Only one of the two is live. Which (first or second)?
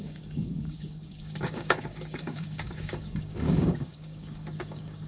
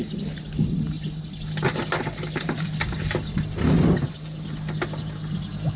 second